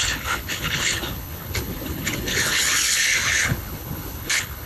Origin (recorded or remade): remade